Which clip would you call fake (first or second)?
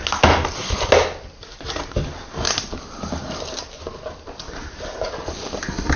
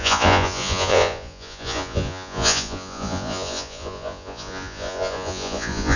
second